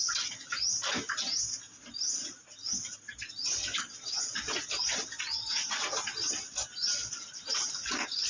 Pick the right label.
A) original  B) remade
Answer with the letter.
A